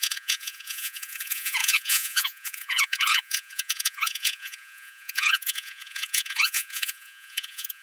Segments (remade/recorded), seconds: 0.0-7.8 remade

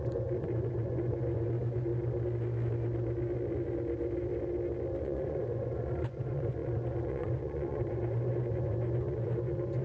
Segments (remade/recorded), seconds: 0.0-1.9 remade; 1.9-5.0 recorded; 5.0-9.8 remade

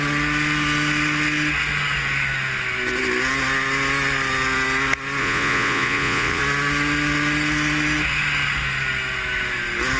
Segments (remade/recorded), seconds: 0.0-5.2 recorded; 5.2-6.4 remade; 6.4-10.0 recorded

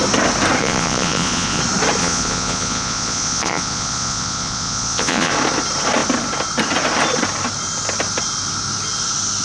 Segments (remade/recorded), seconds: 0.0-0.6 recorded; 0.6-1.6 remade; 1.6-2.0 recorded; 2.0-5.3 remade; 5.3-9.4 recorded

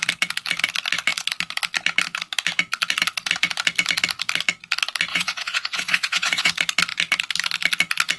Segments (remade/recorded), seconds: 0.0-5.1 recorded; 5.1-6.5 remade; 6.5-8.2 recorded

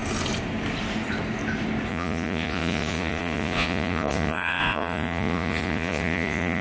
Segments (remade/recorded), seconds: 0.0-1.9 recorded; 1.9-6.6 remade

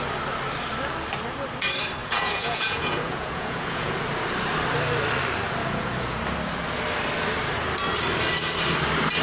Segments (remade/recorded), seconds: 0.0-2.0 recorded; 2.0-3.9 remade; 3.9-5.6 recorded; 5.6-6.2 remade; 6.2-9.2 recorded